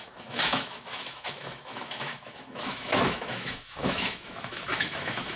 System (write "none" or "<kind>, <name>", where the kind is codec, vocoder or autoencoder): autoencoder, DAC-VAE